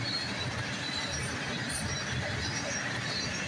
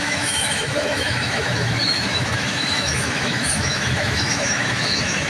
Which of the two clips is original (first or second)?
first